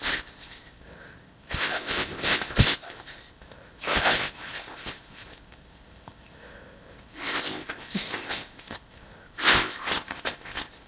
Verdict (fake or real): fake